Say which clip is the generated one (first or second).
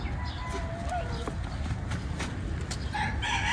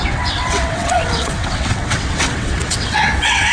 second